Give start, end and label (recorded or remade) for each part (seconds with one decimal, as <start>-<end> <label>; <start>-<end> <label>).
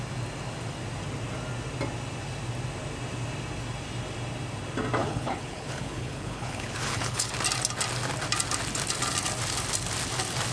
0.0-5.0 recorded; 5.0-7.3 remade; 7.3-10.5 recorded